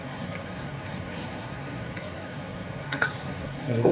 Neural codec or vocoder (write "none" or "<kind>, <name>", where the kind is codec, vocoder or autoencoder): codec, SNAC